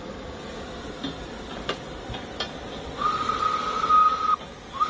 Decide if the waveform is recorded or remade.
recorded